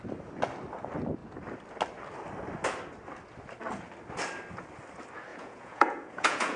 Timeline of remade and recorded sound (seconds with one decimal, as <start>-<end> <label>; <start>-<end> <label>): 0.0-5.3 recorded; 5.3-6.6 remade